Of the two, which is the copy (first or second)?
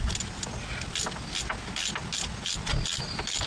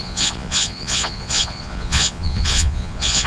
second